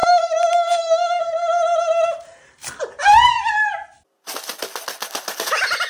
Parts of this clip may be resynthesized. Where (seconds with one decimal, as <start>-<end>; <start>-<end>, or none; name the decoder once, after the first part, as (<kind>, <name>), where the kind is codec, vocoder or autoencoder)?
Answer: 0.0-1.2 (autoencoder, DAC-VAE)